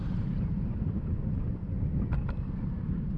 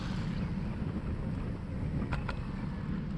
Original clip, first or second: second